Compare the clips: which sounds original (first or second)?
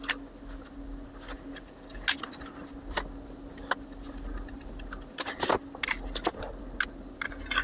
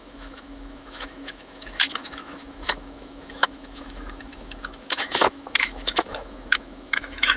first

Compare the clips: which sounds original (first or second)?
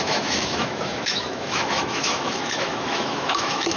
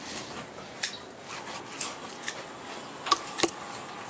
second